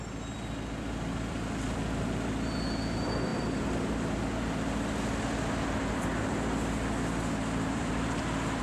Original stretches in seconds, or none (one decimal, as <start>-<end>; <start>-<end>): 0.0-8.6